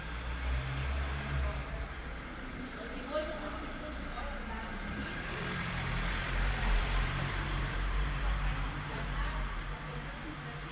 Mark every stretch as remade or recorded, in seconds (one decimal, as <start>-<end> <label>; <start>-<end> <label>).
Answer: 0.0-4.6 recorded; 4.6-9.6 remade; 9.6-10.7 recorded